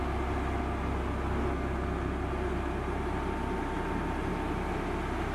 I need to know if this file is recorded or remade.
recorded